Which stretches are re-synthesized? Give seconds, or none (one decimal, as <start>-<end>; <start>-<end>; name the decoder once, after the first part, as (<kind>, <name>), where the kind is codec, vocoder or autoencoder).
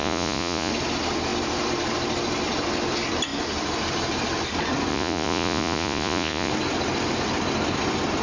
0.0-0.7 (vocoder, Vocos); 4.9-6.5